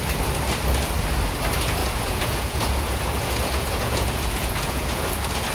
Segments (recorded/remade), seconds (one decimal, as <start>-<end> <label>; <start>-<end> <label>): 0.0-1.8 recorded; 1.8-5.1 remade; 5.1-5.5 recorded